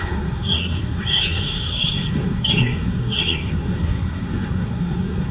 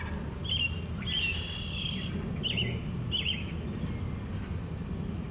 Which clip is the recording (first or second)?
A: second